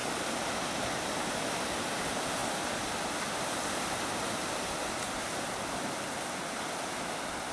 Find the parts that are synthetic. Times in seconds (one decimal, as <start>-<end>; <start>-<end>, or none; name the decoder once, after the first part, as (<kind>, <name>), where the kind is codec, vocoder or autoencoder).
none